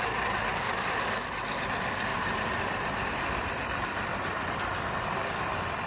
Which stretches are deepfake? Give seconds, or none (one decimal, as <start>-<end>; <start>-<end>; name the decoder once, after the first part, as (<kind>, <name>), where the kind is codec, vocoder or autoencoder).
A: 2.1-2.6 (vocoder, BigVGAN v2); 4.1-4.6